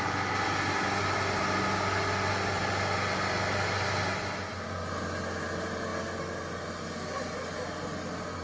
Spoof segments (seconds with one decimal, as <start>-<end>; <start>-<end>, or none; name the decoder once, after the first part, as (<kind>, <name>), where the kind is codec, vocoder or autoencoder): none